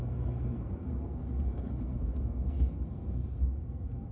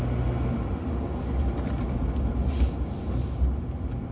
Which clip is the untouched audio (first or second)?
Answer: second